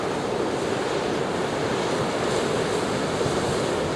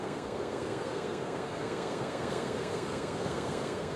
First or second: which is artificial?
second